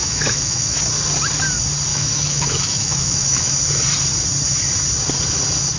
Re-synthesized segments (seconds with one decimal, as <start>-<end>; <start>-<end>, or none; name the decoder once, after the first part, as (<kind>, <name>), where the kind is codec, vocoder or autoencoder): 0.0-0.8 (autoencoder, DAC-VAE); 1.9-3.5